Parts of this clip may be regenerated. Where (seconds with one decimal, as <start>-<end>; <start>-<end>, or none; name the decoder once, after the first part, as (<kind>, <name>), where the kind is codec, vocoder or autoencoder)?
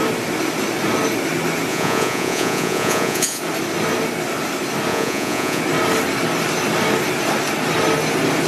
1.7-3.4 (vocoder, Vocos); 4.9-5.6